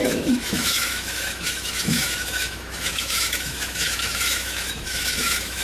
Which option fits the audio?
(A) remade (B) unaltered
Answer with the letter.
A